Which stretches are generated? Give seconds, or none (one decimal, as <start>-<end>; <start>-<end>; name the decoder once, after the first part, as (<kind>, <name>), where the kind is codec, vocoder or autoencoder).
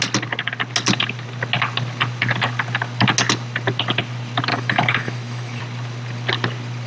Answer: 4.5-5.6 (autoencoder, DAC-VAE)